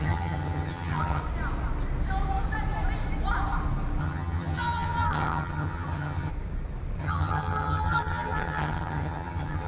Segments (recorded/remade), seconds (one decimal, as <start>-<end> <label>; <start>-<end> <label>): 0.0-1.2 remade; 1.2-4.0 recorded; 4.0-6.3 remade; 6.3-7.0 recorded; 7.0-9.7 remade